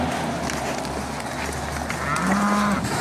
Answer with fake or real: real